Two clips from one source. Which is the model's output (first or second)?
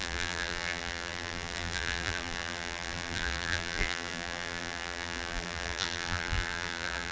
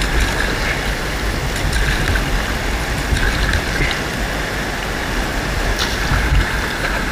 first